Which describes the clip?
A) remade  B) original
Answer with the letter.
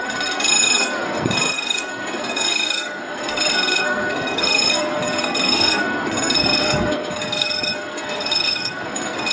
A